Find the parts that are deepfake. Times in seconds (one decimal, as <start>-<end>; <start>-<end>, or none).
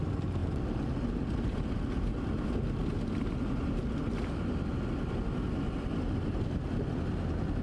none